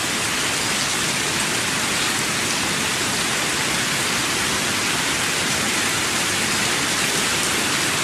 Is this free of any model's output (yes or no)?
yes